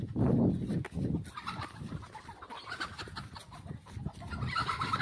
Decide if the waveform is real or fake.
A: real